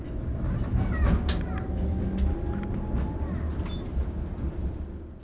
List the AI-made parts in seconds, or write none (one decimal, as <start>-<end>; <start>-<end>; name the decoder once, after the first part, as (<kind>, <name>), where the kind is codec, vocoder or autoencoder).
none